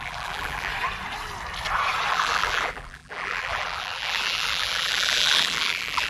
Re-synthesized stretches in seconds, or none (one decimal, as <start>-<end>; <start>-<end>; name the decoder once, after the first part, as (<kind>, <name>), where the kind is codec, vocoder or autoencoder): 0.0-0.7 (vocoder, BigVGAN v2); 2.1-6.1